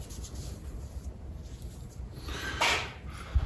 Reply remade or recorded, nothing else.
recorded